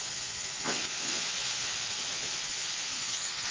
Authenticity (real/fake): fake